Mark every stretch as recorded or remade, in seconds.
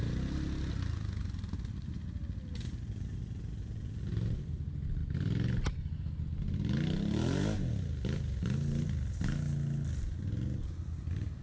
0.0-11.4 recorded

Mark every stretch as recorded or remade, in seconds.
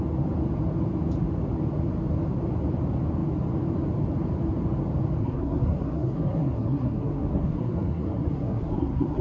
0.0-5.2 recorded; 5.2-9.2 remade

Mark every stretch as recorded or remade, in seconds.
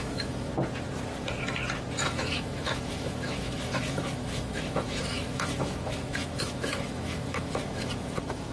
0.0-0.5 remade; 0.5-2.0 recorded; 2.0-8.5 remade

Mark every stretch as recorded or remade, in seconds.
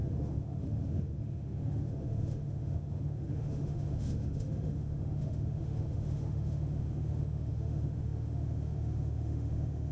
0.0-9.9 remade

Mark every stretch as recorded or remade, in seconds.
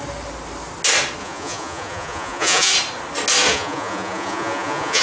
0.0-1.2 recorded; 1.2-2.7 remade; 2.7-3.5 recorded; 3.5-5.0 remade